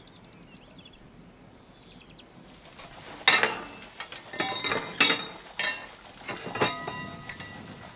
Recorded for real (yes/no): yes